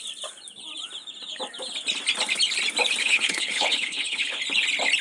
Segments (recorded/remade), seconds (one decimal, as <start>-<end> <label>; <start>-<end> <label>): 0.0-3.0 recorded; 3.0-4.4 remade; 4.4-5.0 recorded